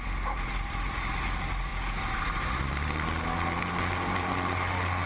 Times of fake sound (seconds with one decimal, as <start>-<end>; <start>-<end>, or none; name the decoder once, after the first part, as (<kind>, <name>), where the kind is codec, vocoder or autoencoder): none